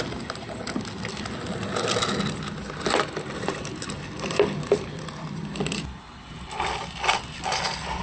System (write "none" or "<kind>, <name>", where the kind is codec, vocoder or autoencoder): none